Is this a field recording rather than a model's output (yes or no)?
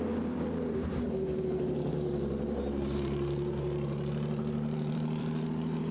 no